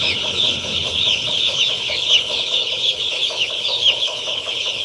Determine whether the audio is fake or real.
fake